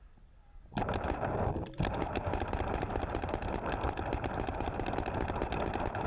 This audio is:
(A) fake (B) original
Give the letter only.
A